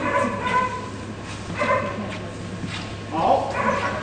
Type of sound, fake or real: real